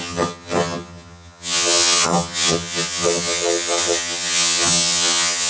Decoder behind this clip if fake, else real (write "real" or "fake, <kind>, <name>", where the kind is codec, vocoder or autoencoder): fake, vocoder, HiFi-GAN